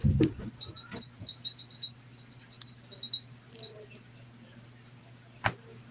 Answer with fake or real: real